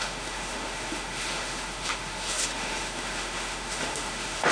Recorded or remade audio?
remade